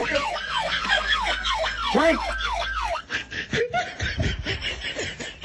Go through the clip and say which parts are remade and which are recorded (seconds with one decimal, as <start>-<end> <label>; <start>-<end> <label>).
0.0-3.6 remade; 3.6-5.4 recorded